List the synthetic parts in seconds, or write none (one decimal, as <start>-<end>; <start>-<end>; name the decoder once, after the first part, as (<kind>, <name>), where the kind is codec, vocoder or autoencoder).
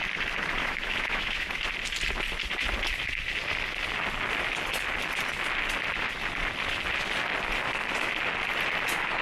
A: 0.6-1.5 (autoencoder, DAC-VAE)